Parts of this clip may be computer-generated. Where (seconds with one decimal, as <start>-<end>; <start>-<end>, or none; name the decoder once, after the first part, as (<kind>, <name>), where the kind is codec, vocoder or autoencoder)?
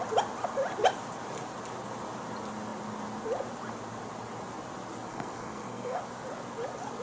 5.1-6.0 (codec, SNAC)